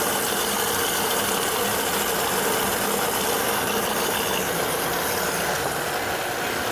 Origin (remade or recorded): recorded